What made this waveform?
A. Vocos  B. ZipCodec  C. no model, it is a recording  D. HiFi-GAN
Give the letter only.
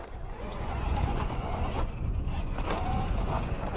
A